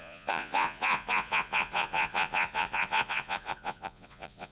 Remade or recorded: remade